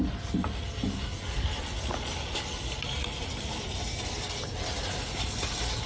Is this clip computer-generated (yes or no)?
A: no